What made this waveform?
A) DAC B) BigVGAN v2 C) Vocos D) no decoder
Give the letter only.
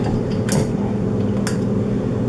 D